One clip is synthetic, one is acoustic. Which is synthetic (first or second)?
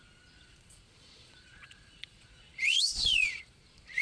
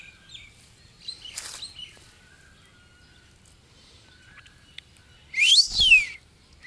first